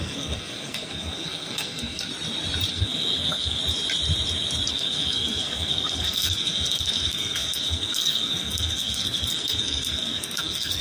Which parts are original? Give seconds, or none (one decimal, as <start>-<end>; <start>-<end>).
2.1-2.7; 3.6-4.7